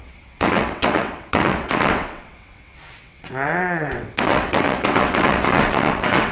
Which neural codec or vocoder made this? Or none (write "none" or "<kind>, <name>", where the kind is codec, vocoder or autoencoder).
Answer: vocoder, WaveNeXt